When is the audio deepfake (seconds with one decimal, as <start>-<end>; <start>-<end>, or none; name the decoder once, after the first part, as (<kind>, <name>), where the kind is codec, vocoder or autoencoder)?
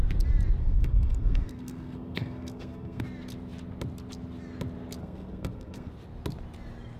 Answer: 0.6-3.0 (codec, SNAC); 5.0-5.9